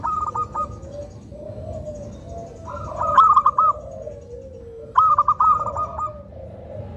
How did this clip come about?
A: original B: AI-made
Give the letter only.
A